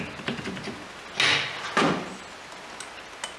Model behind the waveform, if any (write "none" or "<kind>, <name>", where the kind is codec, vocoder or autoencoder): none